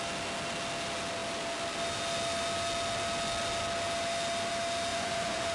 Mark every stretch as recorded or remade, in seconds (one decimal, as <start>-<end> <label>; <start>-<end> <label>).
0.0-4.9 recorded; 4.9-5.5 remade